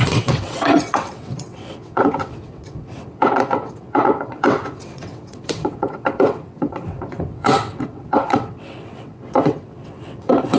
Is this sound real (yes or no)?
no